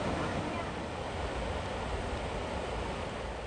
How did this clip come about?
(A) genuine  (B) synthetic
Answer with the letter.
A